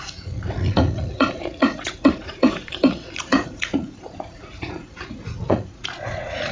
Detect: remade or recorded remade